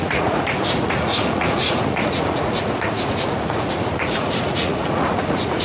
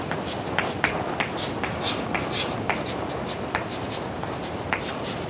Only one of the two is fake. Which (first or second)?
first